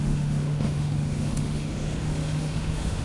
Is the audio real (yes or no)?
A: no